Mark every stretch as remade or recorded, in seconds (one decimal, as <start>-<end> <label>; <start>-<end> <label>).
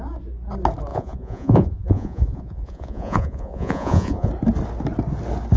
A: 0.0-0.9 recorded; 0.9-4.3 remade; 4.3-5.6 recorded